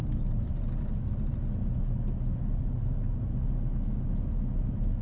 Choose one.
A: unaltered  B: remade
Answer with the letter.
A